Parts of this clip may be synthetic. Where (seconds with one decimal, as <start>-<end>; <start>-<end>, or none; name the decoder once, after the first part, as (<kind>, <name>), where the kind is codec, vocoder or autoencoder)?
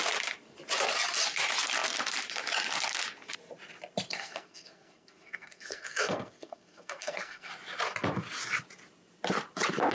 4.1-7.5 (codec, SNAC)